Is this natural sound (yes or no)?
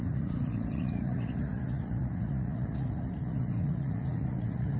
no